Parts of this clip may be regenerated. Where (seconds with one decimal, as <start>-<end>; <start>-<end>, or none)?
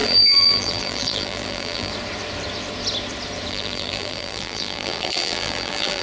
0.0-1.9; 3.5-6.0